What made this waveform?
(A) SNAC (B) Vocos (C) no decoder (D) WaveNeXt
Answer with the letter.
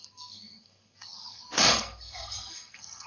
A